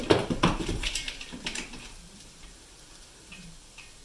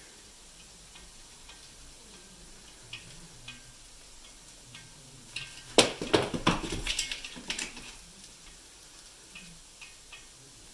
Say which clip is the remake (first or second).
first